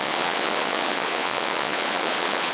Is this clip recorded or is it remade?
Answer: remade